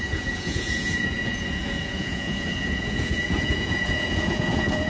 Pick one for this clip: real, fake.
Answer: fake